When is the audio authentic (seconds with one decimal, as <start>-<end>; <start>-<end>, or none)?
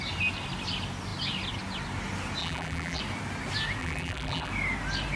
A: 0.0-2.4; 3.0-3.8; 4.5-5.2